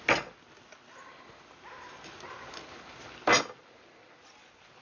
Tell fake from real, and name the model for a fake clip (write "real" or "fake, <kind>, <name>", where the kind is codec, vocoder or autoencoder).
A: real